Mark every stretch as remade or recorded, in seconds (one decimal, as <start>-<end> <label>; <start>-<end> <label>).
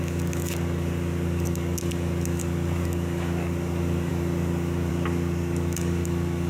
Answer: 0.0-6.5 remade